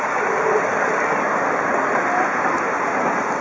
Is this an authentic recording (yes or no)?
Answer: yes